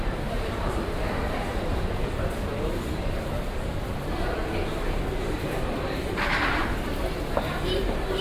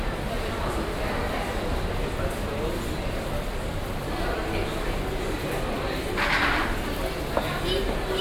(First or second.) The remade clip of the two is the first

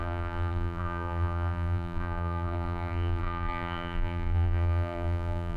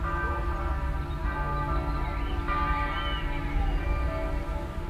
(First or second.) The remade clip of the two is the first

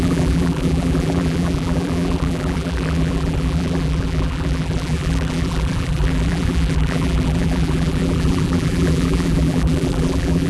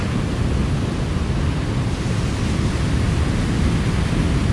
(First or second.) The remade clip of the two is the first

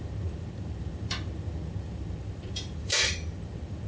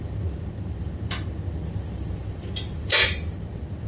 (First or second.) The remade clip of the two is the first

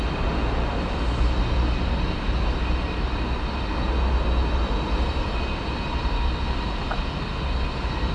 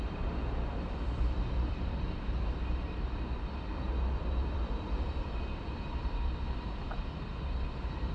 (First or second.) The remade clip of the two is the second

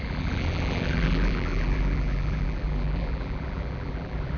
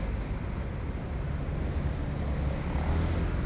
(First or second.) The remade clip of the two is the first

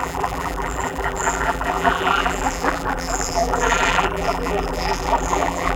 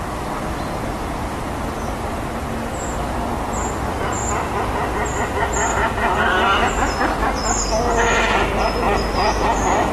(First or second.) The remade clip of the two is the first